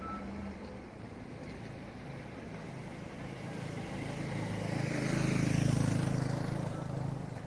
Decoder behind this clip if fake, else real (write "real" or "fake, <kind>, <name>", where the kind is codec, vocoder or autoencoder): real